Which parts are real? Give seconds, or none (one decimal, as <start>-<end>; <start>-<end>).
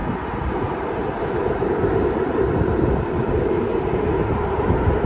0.0-3.1; 3.7-4.6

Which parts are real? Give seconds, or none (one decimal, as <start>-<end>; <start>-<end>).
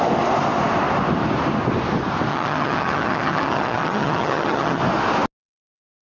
0.0-2.3; 4.8-6.1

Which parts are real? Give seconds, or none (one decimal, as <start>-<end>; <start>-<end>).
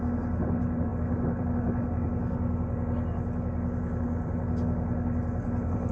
0.0-5.9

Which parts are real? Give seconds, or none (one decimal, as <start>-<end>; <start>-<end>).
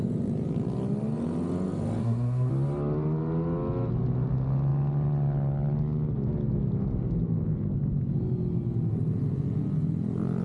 0.0-2.0; 2.5-10.4